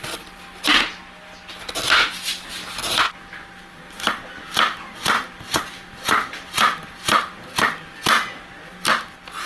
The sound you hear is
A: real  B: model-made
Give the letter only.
A